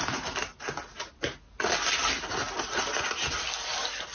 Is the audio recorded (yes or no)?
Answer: yes